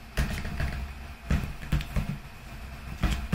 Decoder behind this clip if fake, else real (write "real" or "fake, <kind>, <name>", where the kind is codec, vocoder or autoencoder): real